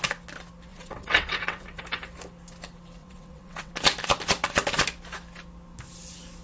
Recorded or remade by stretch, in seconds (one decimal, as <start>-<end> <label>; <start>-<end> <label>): 0.0-0.7 recorded; 0.7-1.8 remade; 1.8-3.0 recorded; 3.0-3.7 remade; 3.7-6.4 recorded